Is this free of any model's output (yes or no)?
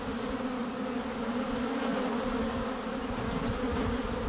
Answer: yes